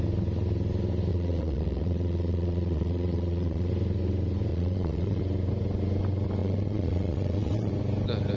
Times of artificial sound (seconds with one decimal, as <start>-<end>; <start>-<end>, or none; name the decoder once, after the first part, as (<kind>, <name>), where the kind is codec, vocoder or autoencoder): 1.1-3.7 (vocoder, Vocos); 4.5-5.2; 6.4-7.7

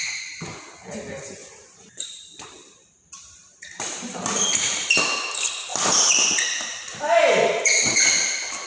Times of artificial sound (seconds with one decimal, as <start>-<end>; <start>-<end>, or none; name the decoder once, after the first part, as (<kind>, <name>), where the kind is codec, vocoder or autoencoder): 1.4-5.0 (vocoder, BigVGAN v2); 5.7-7.6

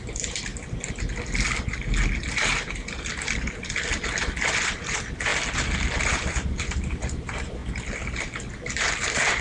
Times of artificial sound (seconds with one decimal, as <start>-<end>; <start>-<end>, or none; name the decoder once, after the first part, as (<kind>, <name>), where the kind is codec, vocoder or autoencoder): 0.0-0.5 (vocoder, BigVGAN v2); 4.6-5.3; 6.0-7.6; 8.5-9.4

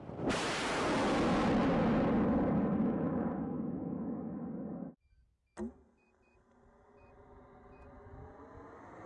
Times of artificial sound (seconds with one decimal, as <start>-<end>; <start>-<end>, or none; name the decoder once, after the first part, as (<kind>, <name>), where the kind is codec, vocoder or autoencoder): 2.8-4.4 (autoencoder, DAC-VAE)